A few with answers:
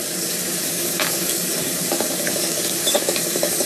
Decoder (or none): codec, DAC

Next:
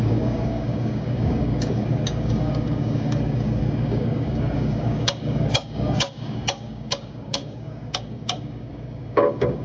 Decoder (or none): codec, DAC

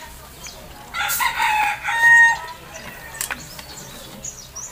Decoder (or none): none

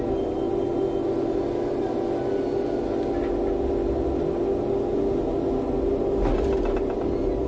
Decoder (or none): none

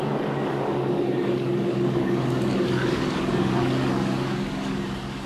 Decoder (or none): codec, DAC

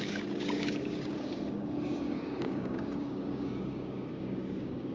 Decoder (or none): codec, DAC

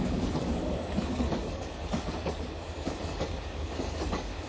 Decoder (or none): codec, DAC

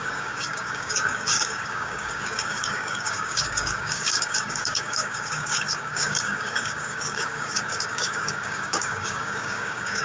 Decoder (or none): codec, DAC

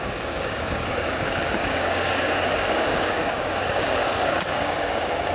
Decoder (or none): codec, DAC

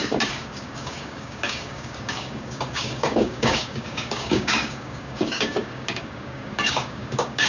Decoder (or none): codec, DAC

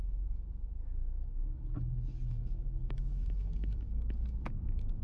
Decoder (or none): codec, DAC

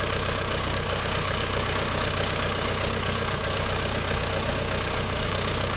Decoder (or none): codec, DAC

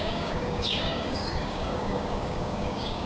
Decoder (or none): codec, DAC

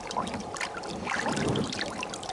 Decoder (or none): none